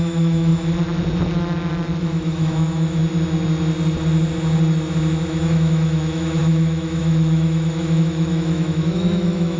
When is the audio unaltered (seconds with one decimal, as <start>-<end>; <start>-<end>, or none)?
0.5-2.0; 3.0-5.3